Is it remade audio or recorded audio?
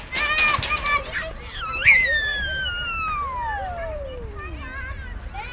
recorded